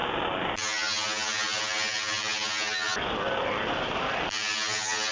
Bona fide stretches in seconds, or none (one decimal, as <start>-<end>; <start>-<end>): 0.0-5.1